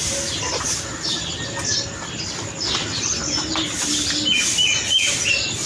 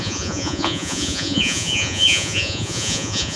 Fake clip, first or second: second